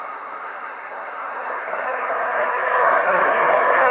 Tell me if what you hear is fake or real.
fake